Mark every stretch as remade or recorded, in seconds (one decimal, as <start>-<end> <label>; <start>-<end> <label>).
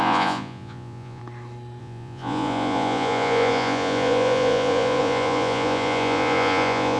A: 0.0-1.2 remade; 1.2-1.8 recorded; 1.8-7.0 remade